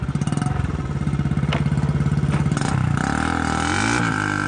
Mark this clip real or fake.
real